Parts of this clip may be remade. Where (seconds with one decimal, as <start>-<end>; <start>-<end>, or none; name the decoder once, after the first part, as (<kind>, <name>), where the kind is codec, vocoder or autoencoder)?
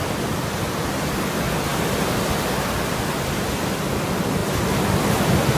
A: none